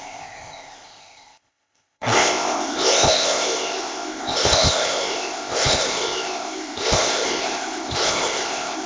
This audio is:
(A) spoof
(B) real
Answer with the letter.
A